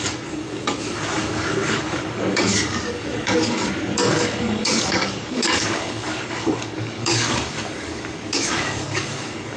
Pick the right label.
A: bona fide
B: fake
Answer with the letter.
B